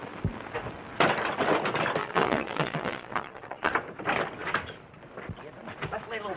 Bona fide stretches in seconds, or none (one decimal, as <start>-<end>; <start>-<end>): 0.0-2.0; 3.7-6.4